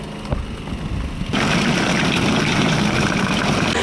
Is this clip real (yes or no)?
yes